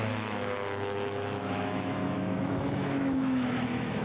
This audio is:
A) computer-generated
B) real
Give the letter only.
A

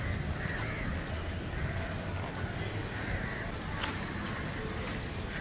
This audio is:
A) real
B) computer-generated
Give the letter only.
A